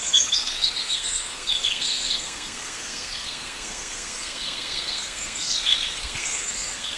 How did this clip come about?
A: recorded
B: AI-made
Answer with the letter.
B